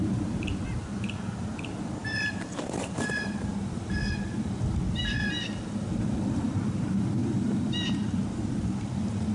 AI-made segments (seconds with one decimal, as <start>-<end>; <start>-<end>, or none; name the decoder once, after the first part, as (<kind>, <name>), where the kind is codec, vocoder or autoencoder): 0.0-9.3 (vocoder, BigVGAN v2)